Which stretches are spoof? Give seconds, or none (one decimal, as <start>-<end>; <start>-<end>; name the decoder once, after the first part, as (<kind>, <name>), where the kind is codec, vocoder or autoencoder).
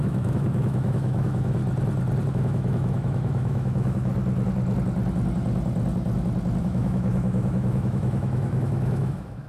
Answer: 0.0-1.6 (autoencoder, DAC-VAE); 2.3-4.1; 6.6-9.5